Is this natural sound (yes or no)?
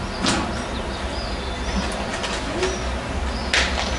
yes